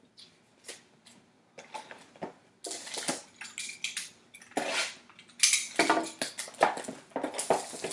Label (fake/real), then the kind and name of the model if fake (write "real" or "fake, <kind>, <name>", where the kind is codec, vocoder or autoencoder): real